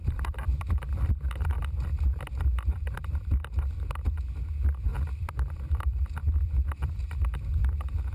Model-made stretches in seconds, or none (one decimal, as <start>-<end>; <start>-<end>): 0.0-3.3; 4.9-7.0